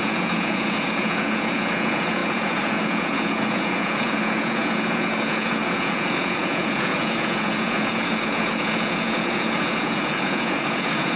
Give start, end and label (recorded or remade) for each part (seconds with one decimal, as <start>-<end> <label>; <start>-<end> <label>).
0.0-11.2 remade